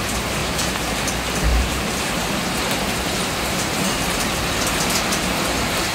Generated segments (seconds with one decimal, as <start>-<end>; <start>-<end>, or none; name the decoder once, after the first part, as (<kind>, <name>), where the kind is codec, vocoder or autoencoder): 0.4-0.9 (vocoder, BigVGAN v2); 1.5-4.5